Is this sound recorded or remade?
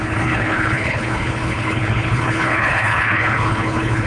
remade